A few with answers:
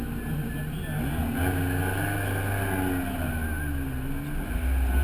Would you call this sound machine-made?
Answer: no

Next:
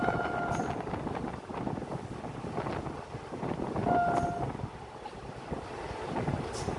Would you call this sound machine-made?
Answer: no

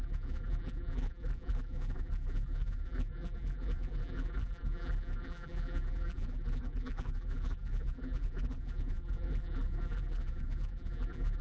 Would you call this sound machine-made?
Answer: yes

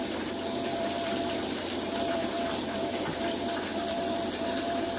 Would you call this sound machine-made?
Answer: no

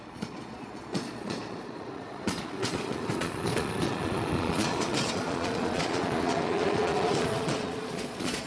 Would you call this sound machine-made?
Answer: yes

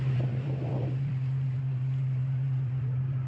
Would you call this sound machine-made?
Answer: yes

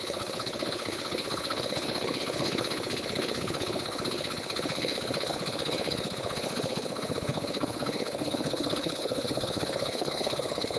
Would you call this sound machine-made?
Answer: yes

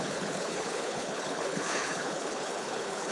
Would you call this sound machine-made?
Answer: yes